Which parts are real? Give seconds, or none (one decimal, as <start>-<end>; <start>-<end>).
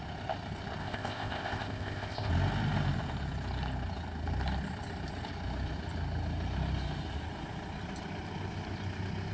0.0-0.8; 2.3-9.3